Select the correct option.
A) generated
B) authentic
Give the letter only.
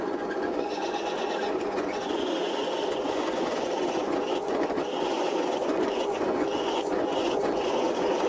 A